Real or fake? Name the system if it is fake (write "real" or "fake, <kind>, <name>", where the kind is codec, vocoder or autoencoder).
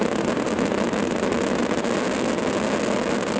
real